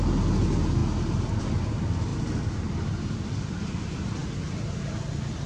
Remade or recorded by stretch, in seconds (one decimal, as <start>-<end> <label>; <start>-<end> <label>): 0.0-2.1 recorded; 2.1-3.1 remade; 3.1-4.2 recorded; 4.2-4.7 remade; 4.7-5.5 recorded